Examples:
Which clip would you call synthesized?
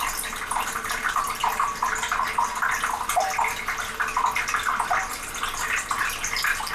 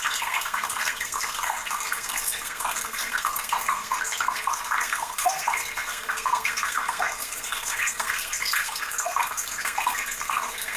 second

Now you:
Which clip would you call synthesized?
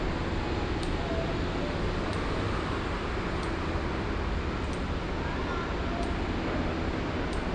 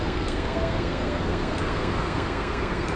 second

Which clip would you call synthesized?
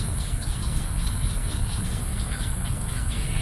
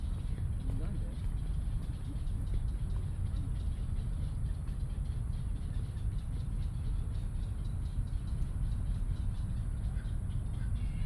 first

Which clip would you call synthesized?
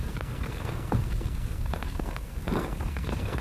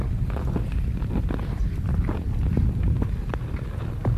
first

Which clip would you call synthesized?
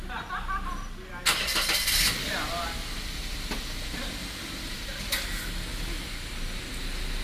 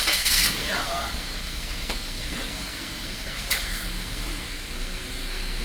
second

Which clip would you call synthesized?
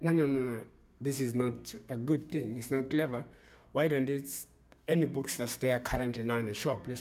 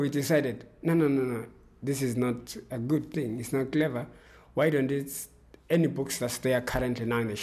first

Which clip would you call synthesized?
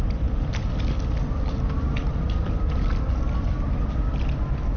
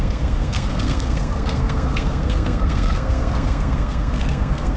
second